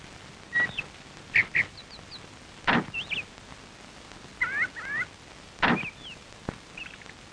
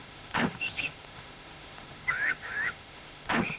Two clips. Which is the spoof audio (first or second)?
second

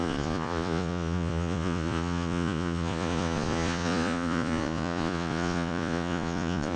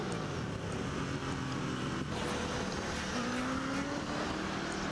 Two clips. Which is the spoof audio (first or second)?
first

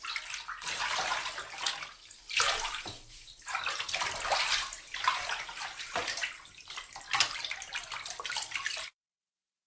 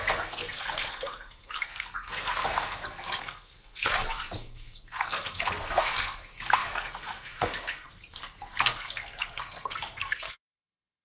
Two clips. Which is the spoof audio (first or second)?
second